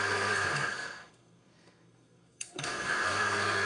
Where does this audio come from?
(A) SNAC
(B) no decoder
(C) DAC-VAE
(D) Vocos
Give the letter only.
A